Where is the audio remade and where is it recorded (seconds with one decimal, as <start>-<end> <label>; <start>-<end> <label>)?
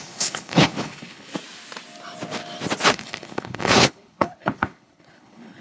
0.0-1.3 remade; 1.3-2.9 recorded; 2.9-5.6 remade